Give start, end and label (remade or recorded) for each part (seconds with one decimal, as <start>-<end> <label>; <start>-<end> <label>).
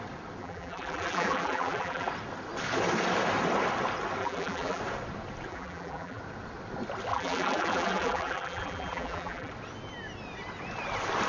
0.0-0.4 recorded; 0.4-2.1 remade; 2.1-4.2 recorded; 4.2-4.8 remade; 4.8-5.5 recorded; 5.5-6.2 remade; 6.2-7.1 recorded; 7.1-9.5 remade; 9.5-11.3 recorded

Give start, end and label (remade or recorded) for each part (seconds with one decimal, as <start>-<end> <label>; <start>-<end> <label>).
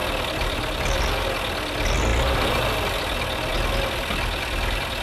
0.0-1.0 remade; 1.0-5.0 recorded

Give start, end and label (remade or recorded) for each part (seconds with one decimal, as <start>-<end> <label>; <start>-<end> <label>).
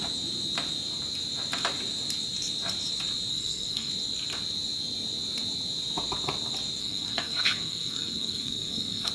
0.0-3.3 recorded; 3.3-3.9 remade; 3.9-6.8 recorded; 6.8-9.1 remade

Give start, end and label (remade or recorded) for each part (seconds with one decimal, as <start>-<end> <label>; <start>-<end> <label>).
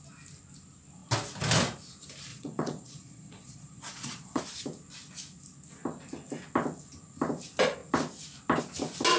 0.0-2.3 recorded; 2.3-4.4 remade; 4.4-9.2 recorded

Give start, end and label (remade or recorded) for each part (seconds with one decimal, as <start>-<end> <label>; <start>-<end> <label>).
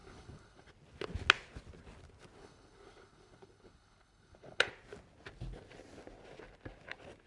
0.0-0.7 remade; 0.7-2.4 recorded; 2.4-4.7 remade; 4.7-7.3 recorded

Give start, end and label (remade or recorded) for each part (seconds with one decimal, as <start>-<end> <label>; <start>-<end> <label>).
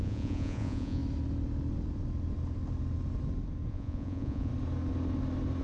0.0-1.0 remade; 1.0-3.7 recorded; 3.7-4.5 remade; 4.5-5.6 recorded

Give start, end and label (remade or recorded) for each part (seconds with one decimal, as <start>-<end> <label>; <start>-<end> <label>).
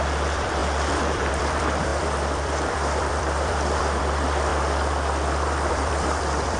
0.0-4.5 remade; 4.5-5.7 recorded; 5.7-6.6 remade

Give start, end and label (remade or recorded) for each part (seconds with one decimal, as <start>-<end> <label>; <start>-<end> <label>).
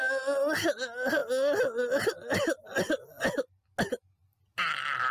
0.0-5.1 recorded